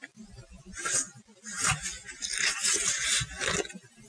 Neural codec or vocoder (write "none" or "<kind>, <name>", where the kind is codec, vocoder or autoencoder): none